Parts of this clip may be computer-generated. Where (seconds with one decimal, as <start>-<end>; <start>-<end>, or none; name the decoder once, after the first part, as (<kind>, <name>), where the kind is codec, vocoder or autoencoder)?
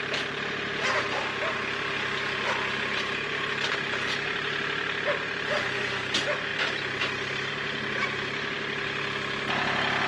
none